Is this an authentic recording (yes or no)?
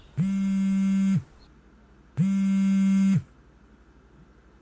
yes